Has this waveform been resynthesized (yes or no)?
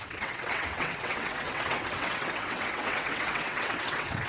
yes